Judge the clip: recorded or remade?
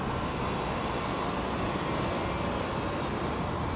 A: recorded